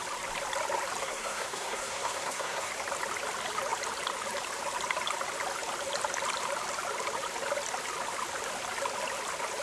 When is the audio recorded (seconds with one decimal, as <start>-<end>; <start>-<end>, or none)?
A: 0.0-1.0; 2.7-9.6

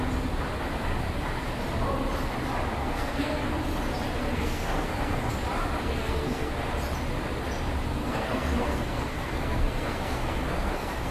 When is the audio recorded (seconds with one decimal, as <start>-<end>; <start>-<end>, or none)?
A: 0.0-2.8; 3.4-4.2; 5.3-5.8; 6.5-8.0

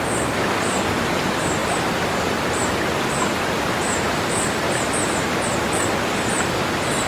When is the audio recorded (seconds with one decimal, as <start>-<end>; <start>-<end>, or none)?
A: 0.0-7.1

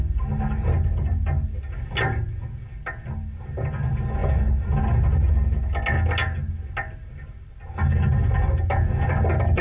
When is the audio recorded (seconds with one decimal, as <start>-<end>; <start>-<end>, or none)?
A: 0.0-9.6

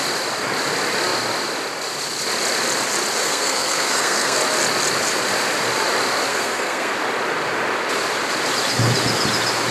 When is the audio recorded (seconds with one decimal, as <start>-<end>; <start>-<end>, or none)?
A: 0.0-3.2; 4.4-6.3; 6.9-9.7

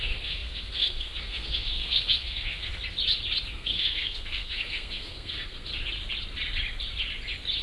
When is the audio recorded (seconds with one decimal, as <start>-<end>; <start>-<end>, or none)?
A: 2.7-3.5; 5.7-7.6